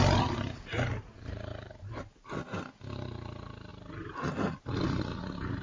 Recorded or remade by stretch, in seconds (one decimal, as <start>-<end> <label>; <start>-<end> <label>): 0.0-5.6 recorded